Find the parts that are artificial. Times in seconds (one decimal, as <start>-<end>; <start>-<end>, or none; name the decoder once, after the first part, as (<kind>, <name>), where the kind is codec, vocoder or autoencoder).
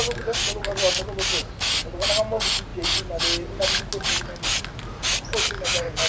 none